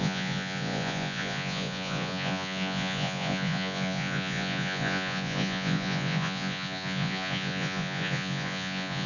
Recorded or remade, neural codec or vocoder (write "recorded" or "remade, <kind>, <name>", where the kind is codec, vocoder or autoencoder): remade, vocoder, Vocos